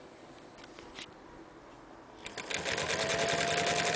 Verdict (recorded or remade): recorded